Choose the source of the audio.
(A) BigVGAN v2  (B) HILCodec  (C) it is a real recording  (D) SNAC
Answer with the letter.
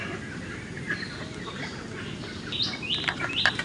C